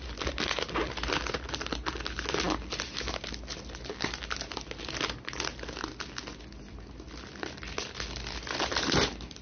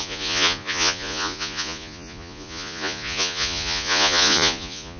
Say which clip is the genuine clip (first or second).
first